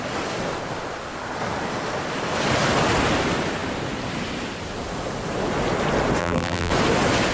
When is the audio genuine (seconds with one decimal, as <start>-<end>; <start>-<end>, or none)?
0.0-6.2; 6.7-7.3